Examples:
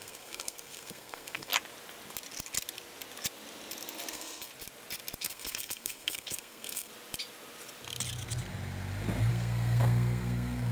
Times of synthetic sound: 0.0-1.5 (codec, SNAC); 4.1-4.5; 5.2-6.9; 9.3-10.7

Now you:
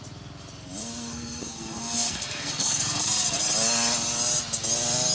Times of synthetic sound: 0.8-3.4 (codec, SNAC)

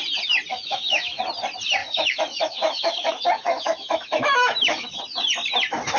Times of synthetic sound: 0.5-1.2 (autoencoder, DAC-VAE); 1.8-5.0